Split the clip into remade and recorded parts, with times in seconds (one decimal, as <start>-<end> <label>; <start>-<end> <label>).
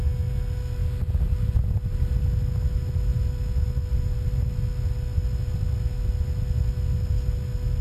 0.0-7.8 recorded